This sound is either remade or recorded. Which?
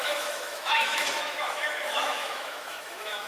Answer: remade